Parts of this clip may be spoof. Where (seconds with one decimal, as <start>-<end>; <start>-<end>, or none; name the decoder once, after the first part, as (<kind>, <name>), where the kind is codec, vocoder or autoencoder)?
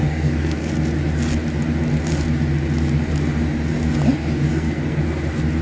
0.0-0.7 (codec, SNAC); 4.5-5.0